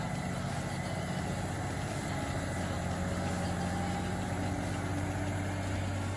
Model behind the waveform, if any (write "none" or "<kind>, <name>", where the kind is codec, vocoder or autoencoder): none